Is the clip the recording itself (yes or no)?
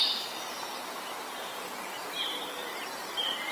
no